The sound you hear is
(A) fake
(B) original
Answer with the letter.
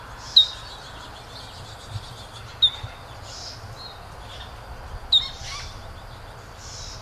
B